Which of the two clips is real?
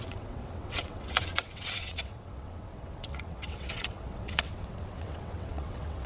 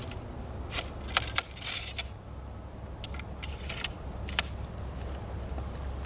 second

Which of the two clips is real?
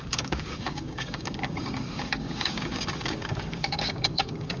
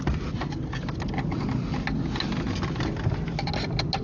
second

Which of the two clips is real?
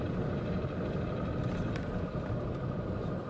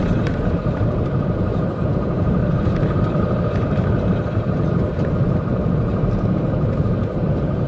first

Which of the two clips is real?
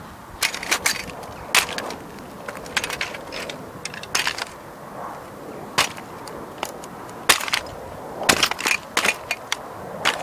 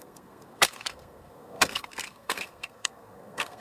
first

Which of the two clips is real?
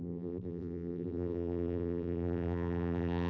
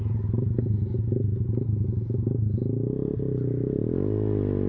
second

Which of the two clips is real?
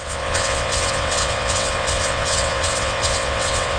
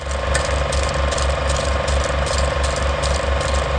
second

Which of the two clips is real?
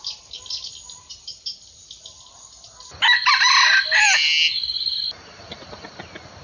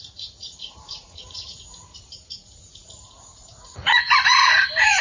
first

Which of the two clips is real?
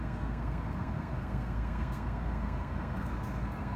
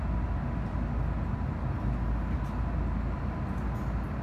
second